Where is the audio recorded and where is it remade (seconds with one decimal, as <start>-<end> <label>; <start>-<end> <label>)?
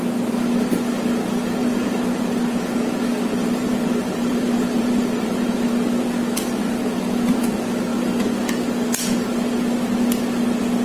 0.0-1.6 recorded; 1.6-2.2 remade; 2.2-3.4 recorded; 3.4-5.7 remade; 5.7-10.8 recorded